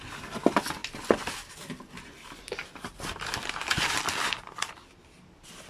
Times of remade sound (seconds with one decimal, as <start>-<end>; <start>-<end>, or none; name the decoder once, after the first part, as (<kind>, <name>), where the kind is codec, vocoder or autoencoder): 2.6-5.7 (vocoder, BigVGAN v2)